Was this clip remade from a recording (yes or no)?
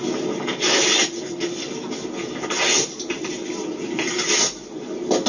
no